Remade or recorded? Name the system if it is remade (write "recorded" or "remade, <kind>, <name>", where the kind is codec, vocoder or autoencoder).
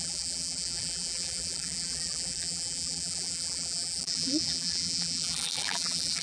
remade, vocoder, BigVGAN v2